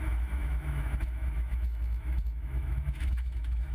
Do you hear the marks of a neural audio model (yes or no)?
yes